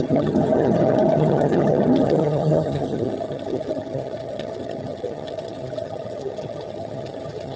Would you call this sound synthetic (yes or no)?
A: yes